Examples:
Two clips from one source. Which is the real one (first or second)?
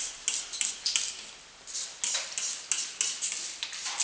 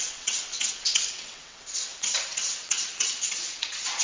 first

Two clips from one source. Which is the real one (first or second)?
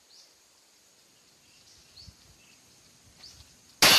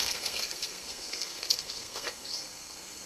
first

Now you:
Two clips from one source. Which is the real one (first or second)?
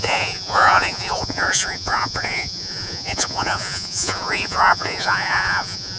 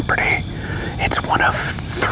second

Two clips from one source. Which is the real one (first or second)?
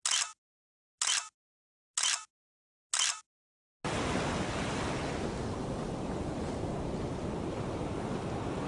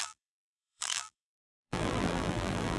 first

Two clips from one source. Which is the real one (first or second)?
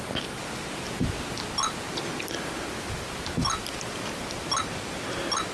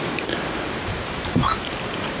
first